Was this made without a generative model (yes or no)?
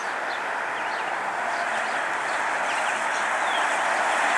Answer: yes